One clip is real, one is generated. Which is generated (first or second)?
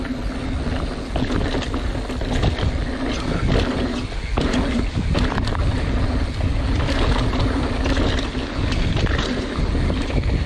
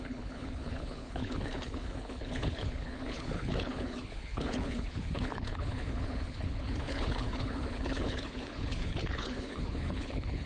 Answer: second